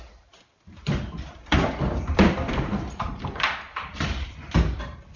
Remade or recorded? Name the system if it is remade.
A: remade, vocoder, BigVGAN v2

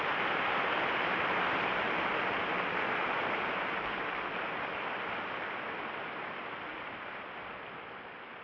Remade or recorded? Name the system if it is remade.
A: recorded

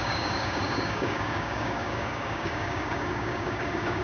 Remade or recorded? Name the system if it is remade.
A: remade, codec, DAC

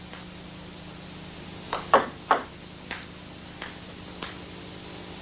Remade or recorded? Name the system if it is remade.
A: recorded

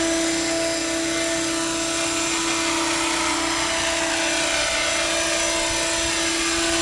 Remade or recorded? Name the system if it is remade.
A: recorded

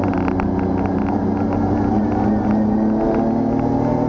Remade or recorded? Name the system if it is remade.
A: recorded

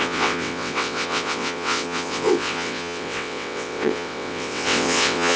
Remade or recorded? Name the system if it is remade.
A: remade, vocoder, WaveNeXt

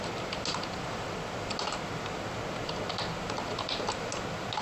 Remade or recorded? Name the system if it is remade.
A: recorded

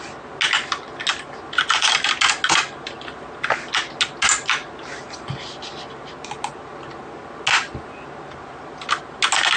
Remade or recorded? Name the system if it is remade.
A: recorded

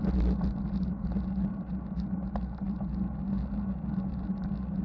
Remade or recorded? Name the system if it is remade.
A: recorded